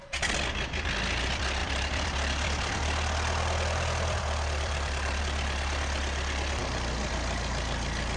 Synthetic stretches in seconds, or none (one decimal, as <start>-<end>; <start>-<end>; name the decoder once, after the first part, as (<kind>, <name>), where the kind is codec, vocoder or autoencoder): 1.6-5.2 (vocoder, BigVGAN v2)